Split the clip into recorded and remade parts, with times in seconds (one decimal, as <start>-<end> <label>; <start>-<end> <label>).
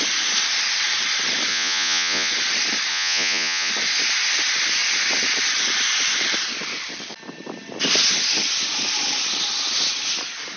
0.0-1.5 recorded; 1.5-2.3 remade; 2.3-2.9 recorded; 2.9-3.7 remade; 3.7-10.6 recorded